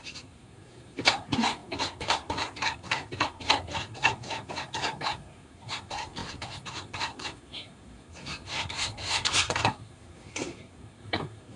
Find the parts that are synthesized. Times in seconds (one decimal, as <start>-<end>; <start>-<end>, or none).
0.0-11.6